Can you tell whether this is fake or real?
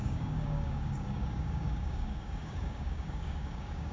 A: fake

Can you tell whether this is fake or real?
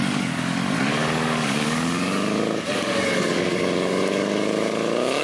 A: fake